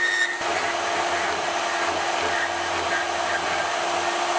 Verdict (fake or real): real